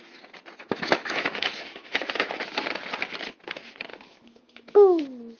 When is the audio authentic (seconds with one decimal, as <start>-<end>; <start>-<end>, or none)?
0.0-0.6; 2.3-3.9; 5.0-5.4